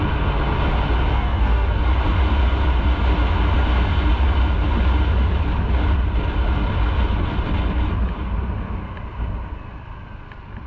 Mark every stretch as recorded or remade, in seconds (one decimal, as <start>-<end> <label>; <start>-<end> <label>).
0.0-1.1 recorded; 1.1-1.8 remade; 1.8-10.7 recorded